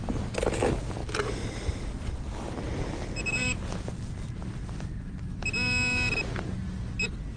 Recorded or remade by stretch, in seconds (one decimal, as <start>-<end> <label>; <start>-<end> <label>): 0.0-7.4 recorded